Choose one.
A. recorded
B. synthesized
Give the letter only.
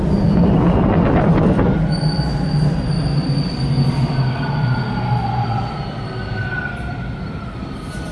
A